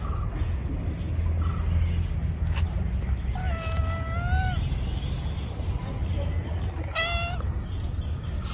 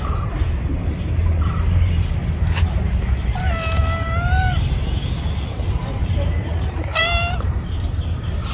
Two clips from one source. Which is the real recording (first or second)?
first